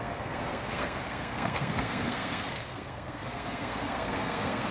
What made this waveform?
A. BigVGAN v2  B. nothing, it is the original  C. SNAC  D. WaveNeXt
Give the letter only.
C